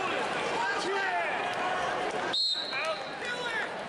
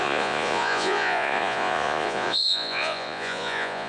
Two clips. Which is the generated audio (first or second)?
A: second